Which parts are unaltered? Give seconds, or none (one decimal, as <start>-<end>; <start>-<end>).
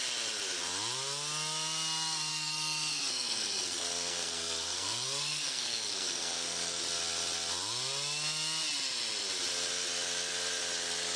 0.0-2.3; 6.8-11.2